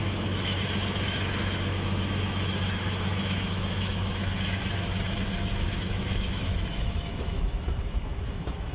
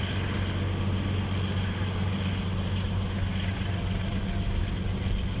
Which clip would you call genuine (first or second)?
second